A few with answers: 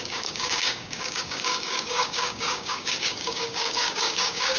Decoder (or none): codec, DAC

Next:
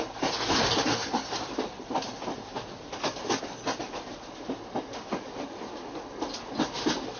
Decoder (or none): none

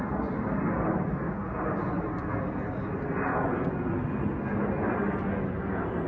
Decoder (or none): none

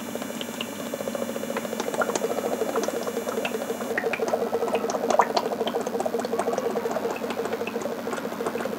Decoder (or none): none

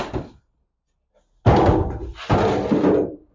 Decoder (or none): none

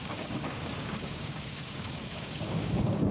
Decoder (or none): codec, DAC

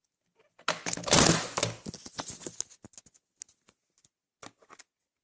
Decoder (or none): none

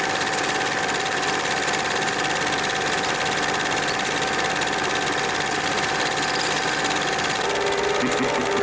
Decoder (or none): none